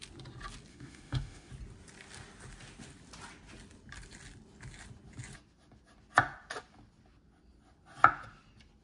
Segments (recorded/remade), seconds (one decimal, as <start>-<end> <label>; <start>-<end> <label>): 0.0-0.7 recorded; 0.7-1.5 remade; 1.5-8.8 recorded